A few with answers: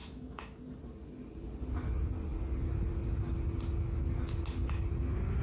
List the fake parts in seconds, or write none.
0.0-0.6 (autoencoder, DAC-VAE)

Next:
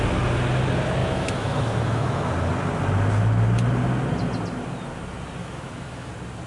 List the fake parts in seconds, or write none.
1.0-2.3 (autoencoder, DAC-VAE); 5.4-6.1

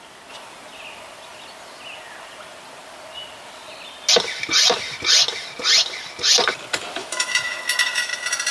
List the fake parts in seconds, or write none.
7.0-8.1 (autoencoder, DAC-VAE)

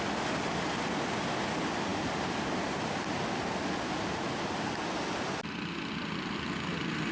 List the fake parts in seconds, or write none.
none